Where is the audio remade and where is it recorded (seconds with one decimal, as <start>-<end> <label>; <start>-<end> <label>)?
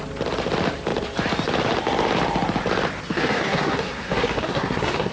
0.0-3.1 recorded; 3.1-5.1 remade